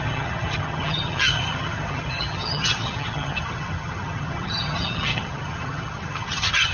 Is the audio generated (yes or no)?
yes